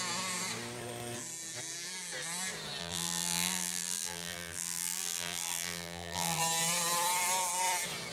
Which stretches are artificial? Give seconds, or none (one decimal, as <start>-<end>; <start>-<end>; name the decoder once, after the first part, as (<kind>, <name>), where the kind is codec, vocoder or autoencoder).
2.8-6.4 (vocoder, BigVGAN v2)